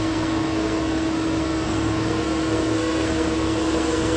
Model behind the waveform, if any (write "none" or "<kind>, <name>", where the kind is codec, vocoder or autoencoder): codec, SNAC